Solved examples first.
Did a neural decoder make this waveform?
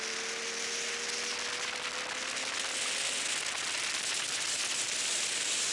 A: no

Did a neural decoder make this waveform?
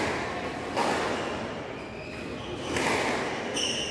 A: no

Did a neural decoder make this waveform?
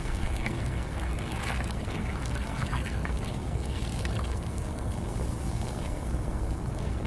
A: yes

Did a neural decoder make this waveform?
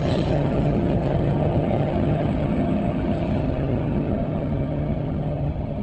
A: yes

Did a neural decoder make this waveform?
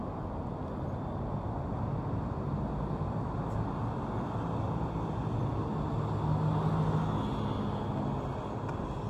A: no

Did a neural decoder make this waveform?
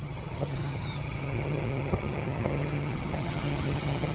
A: yes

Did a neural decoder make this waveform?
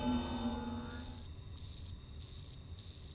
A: no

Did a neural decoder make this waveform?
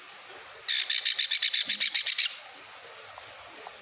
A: no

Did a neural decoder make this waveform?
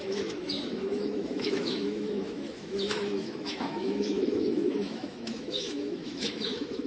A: yes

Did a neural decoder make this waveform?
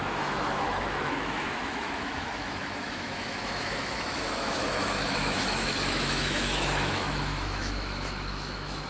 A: yes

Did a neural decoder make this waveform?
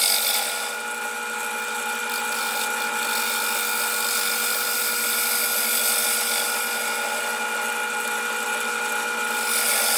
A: no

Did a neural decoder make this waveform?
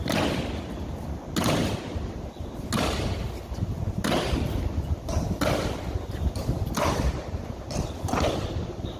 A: no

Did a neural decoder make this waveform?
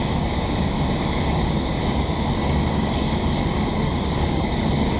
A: yes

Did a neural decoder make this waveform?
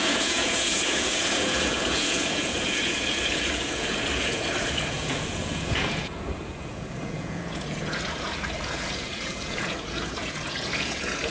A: yes